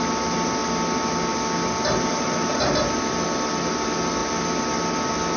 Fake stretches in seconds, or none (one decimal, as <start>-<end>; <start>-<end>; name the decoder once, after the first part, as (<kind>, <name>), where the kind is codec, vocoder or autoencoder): none